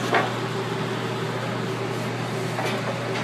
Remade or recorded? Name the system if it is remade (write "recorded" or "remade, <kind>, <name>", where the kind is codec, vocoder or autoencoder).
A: recorded